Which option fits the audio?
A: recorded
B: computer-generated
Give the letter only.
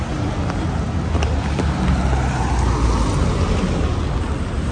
A